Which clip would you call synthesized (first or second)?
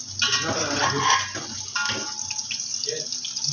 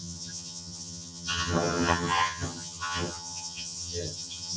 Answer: second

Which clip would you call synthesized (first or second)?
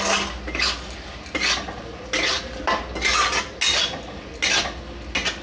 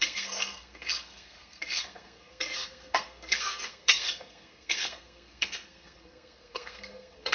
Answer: second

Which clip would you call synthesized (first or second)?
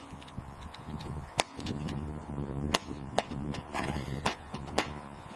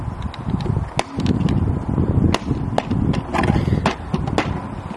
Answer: first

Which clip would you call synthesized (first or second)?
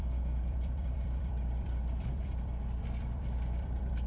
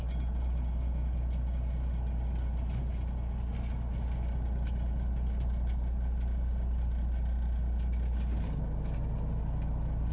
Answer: first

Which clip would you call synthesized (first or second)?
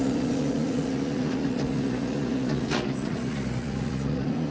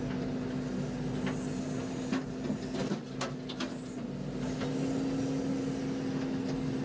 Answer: first